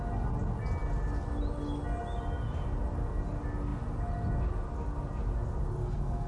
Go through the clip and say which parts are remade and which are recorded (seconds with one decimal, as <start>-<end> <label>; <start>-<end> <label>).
0.0-5.8 recorded; 5.8-6.3 remade